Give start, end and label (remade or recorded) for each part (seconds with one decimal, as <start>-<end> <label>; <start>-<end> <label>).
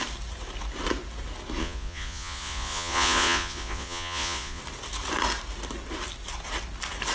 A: 0.0-1.6 recorded; 1.6-4.6 remade; 4.6-7.1 recorded